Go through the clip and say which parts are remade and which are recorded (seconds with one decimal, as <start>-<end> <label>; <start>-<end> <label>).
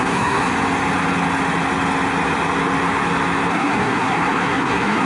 0.0-0.5 remade; 0.5-3.5 recorded; 3.5-5.1 remade